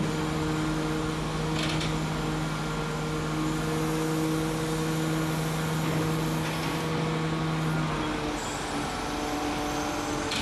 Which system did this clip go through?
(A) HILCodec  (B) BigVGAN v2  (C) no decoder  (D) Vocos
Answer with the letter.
C